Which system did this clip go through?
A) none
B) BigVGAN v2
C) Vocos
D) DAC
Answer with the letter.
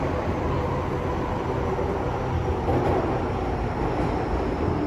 A